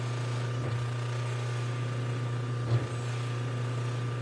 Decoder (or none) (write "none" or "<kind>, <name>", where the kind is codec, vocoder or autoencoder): none